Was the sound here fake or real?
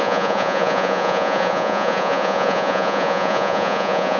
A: fake